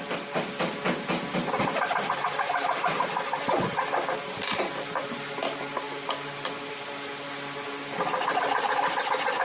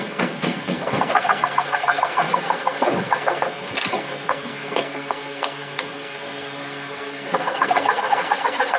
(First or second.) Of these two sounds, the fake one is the second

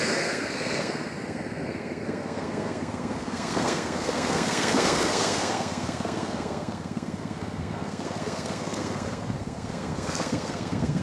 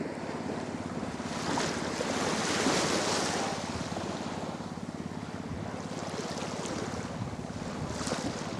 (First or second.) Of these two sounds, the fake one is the first